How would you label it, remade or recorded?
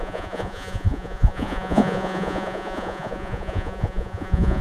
remade